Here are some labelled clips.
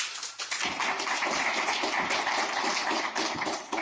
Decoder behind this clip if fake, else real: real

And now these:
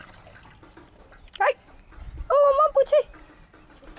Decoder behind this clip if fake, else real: real